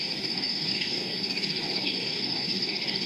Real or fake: fake